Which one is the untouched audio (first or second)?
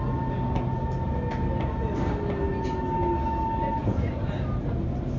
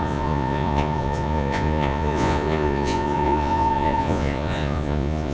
first